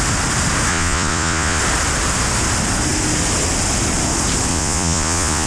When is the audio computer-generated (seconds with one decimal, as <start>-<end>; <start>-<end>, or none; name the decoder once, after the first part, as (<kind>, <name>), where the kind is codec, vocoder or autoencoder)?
0.7-1.6 (vocoder, Vocos); 4.5-5.5